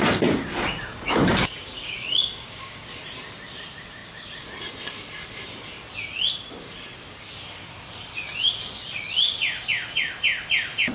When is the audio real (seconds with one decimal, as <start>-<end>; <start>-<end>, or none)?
0.0-0.9; 3.0-10.9